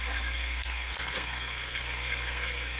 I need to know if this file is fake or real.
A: fake